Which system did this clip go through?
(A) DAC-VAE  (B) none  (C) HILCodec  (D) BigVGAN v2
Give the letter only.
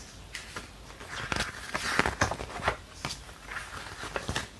B